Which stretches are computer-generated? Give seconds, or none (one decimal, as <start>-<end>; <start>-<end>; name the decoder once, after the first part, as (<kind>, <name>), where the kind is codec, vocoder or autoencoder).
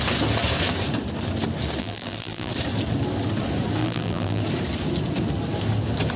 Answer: 1.8-2.5 (vocoder, BigVGAN v2); 3.8-4.4